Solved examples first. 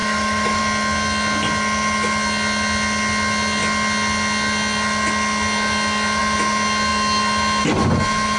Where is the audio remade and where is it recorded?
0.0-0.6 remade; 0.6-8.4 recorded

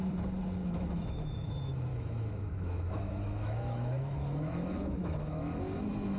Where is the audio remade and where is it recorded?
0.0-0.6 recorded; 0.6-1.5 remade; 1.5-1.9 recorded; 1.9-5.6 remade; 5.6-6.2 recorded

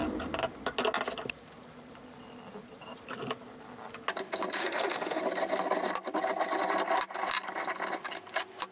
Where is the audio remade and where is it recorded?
0.0-4.6 recorded; 4.6-5.2 remade; 5.2-8.7 recorded

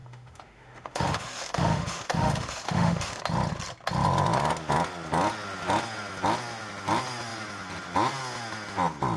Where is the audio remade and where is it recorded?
0.0-3.2 remade; 3.2-9.2 recorded

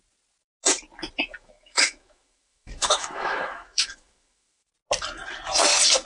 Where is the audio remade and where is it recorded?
0.0-1.3 recorded; 1.3-4.7 remade; 4.7-6.1 recorded

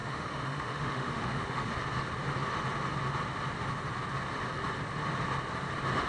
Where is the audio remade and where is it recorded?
0.0-1.7 remade; 1.7-6.1 recorded